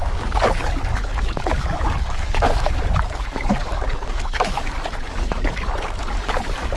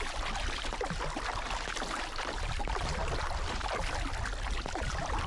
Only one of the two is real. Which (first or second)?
second